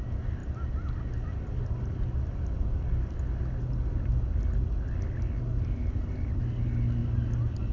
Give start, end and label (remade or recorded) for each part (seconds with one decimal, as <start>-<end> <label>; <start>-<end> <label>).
0.0-7.7 recorded